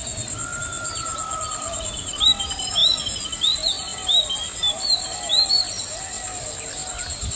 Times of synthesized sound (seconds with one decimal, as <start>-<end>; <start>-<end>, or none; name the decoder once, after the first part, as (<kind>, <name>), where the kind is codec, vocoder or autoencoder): 0.0-1.1 (vocoder, BigVGAN v2); 1.7-2.8; 6.6-7.4